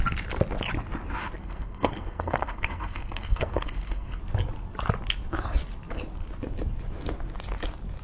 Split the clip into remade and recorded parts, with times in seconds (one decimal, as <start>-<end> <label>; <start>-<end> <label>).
0.0-1.4 recorded; 1.4-4.2 remade; 4.2-8.0 recorded